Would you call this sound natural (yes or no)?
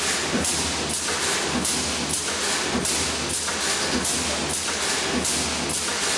yes